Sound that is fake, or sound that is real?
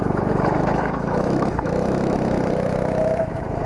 fake